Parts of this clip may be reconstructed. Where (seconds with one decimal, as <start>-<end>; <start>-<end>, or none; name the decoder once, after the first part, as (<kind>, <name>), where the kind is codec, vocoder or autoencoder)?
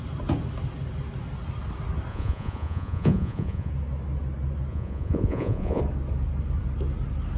2.1-3.7 (vocoder, Vocos); 4.7-5.8